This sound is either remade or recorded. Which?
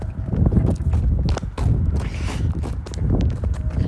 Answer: recorded